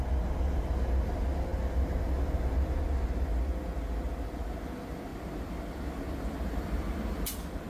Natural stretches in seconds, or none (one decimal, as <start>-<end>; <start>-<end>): 0.0-7.7